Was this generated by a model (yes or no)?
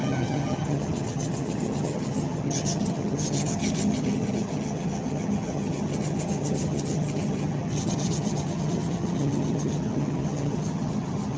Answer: yes